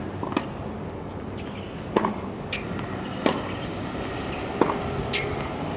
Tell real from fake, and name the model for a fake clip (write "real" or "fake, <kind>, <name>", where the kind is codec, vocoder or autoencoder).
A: real